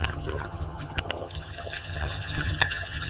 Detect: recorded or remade remade